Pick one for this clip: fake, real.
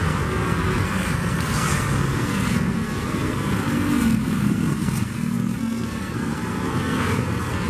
fake